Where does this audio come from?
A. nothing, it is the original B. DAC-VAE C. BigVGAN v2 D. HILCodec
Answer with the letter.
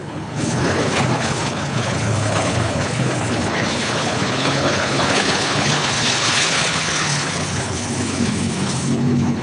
D